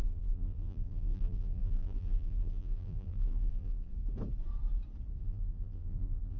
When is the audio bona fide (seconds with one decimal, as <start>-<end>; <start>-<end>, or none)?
3.9-5.2